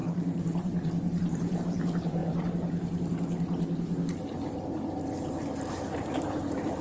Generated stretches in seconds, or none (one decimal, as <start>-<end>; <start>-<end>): 0.0-6.8